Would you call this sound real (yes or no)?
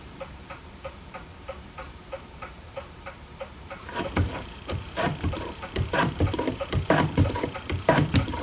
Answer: no